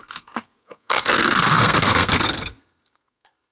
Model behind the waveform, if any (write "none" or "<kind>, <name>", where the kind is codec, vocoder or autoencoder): codec, SNAC